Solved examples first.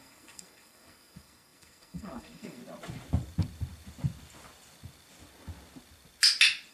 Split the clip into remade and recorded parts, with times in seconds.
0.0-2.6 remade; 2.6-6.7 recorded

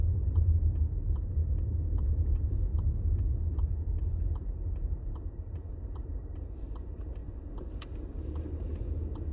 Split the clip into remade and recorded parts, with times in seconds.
0.0-1.4 remade; 1.4-2.1 recorded; 2.1-2.7 remade; 2.7-4.0 recorded; 4.0-7.2 remade; 7.2-7.7 recorded; 7.7-9.3 remade

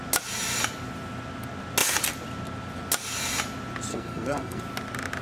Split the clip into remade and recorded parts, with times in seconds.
0.0-3.9 recorded; 3.9-4.6 remade; 4.6-5.2 recorded

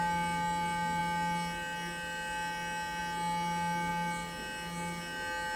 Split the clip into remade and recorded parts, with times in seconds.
0.0-5.6 recorded

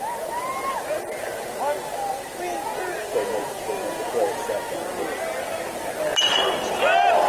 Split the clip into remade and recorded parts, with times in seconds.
0.0-3.0 recorded; 3.0-4.4 remade; 4.4-7.3 recorded

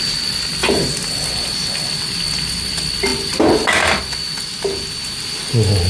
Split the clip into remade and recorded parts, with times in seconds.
0.0-5.9 recorded

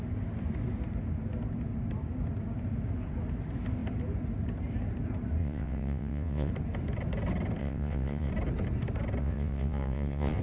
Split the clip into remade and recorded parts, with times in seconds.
0.0-5.4 recorded; 5.4-6.5 remade; 6.5-7.6 recorded; 7.6-8.3 remade; 8.3-9.2 recorded; 9.2-10.4 remade